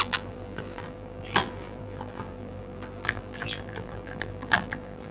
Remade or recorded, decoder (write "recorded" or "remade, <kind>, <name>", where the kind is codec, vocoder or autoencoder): remade, vocoder, BigVGAN v2